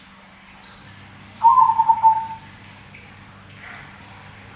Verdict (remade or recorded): recorded